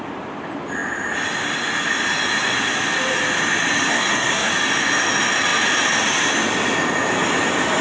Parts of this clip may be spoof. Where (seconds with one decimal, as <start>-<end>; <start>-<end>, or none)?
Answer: 3.9-4.5